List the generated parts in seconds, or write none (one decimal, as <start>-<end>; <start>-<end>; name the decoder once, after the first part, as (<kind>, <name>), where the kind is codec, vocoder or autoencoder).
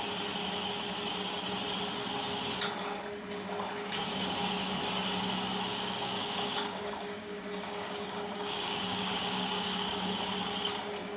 5.7-10.2 (codec, DAC)